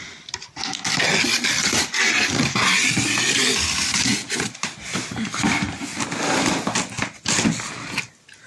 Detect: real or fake real